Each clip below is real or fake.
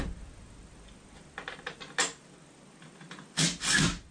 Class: real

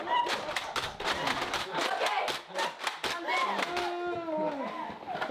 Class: real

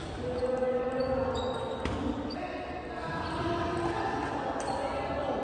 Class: real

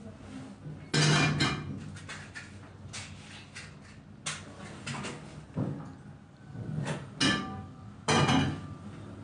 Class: real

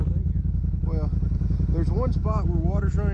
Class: real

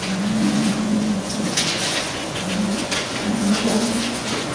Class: fake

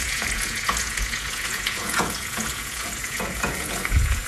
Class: fake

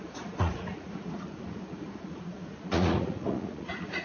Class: fake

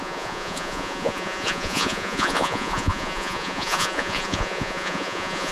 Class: fake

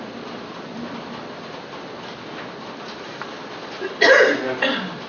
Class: real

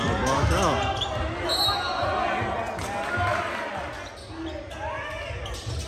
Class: real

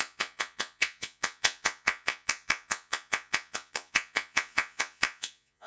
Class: fake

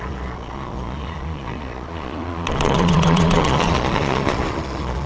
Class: fake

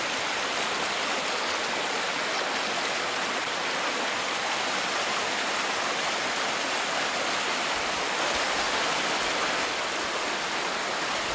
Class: real